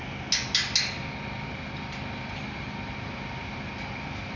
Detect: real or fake real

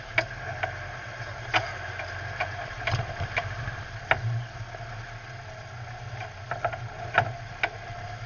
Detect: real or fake real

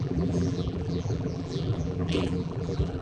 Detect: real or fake fake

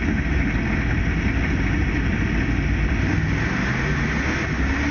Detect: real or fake real